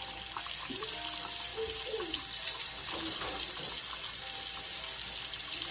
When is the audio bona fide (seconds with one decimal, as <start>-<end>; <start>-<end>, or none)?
0.0-5.7

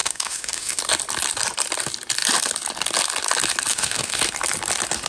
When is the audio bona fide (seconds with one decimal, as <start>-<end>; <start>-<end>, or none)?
0.8-3.7; 4.2-5.1